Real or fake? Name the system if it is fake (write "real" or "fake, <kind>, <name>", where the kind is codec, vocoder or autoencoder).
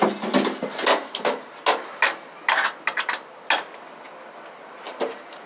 real